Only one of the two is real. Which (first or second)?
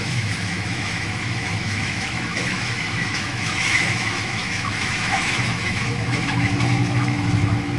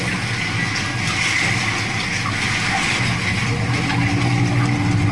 second